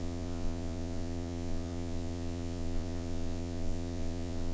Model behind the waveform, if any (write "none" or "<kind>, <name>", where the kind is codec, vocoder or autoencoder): vocoder, Vocos